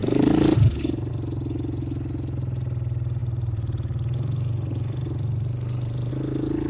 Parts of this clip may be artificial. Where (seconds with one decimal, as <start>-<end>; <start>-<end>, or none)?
0.0-1.1; 3.2-6.1